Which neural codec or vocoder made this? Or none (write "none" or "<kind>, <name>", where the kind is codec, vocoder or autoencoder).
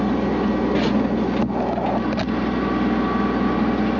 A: none